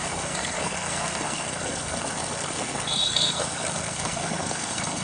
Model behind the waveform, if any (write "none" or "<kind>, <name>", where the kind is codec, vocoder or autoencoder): codec, SNAC